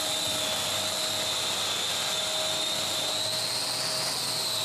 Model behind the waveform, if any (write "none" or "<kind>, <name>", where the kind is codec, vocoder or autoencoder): none